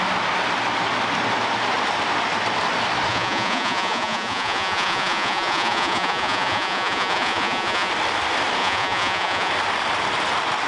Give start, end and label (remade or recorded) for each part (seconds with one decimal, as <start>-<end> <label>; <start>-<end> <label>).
0.0-3.1 recorded; 3.1-7.9 remade; 7.9-8.6 recorded; 8.6-9.5 remade; 9.5-10.7 recorded